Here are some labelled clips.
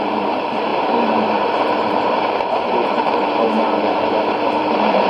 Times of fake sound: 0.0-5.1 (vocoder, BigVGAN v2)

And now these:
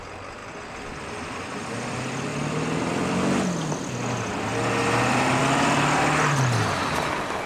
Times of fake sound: none